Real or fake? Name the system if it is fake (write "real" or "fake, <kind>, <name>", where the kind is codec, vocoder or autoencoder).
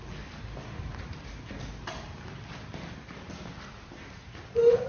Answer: real